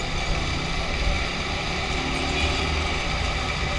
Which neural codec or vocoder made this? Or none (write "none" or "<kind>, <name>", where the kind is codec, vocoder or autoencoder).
none